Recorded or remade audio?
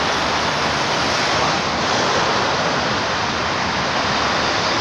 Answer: recorded